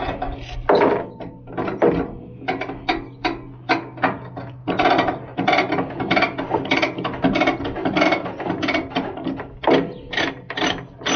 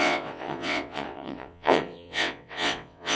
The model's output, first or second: second